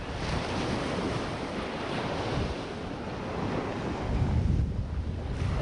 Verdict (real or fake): real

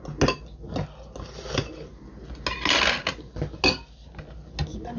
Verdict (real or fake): real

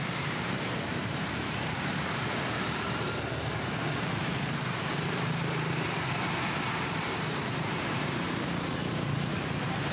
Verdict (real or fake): fake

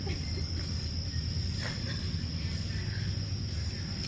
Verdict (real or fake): real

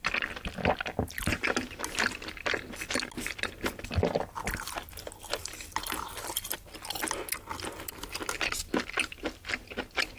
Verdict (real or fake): real